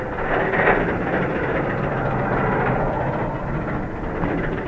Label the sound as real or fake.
real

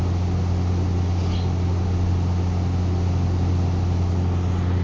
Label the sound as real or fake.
real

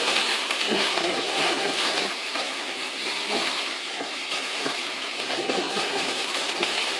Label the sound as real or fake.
fake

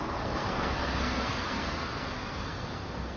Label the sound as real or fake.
fake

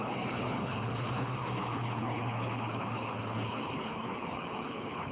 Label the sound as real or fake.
fake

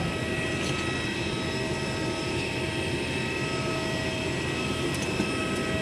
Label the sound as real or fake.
real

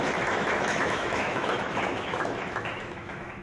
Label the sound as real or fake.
fake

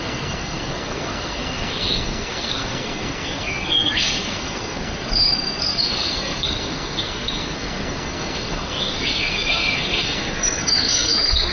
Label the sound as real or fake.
fake